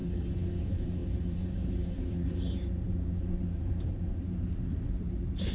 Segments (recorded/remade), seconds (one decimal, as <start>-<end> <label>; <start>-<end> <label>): 0.0-0.6 recorded; 0.6-5.5 remade